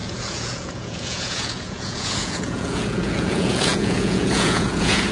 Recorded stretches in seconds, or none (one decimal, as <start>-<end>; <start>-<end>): none